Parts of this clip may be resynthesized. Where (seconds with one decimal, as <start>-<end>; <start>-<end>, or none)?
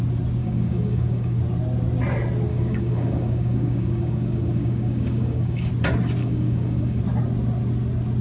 0.4-1.4; 2.5-5.7; 6.2-7.0